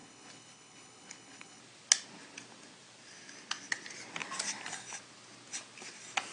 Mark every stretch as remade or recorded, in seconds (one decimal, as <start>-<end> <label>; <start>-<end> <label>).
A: 0.0-1.6 remade; 1.6-6.3 recorded